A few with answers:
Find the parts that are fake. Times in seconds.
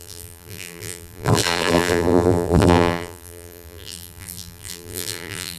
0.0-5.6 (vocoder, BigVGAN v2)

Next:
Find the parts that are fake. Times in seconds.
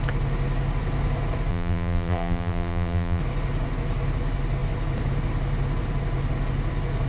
1.5-3.2 (vocoder, BigVGAN v2)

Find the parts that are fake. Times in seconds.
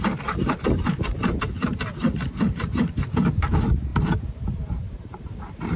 0.0-1.7 (vocoder, BigVGAN v2); 2.5-5.8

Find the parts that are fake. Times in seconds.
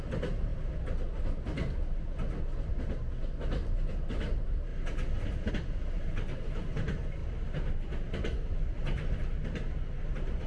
0.0-0.5 (vocoder, BigVGAN v2); 3.4-4.7; 5.5-7.2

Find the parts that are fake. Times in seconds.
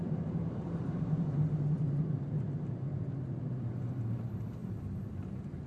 0.0-2.3 (vocoder, BigVGAN v2); 4.6-5.3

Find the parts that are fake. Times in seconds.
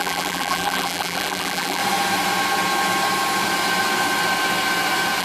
0.0-1.8 (vocoder, BigVGAN v2)